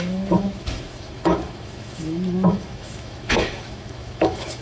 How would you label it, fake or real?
fake